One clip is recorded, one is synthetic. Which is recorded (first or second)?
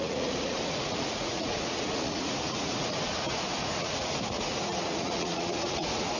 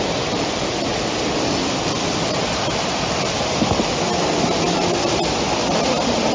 second